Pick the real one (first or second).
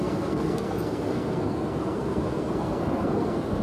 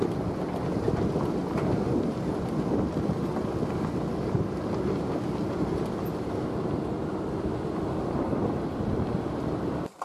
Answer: second